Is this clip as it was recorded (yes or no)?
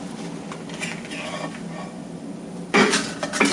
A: yes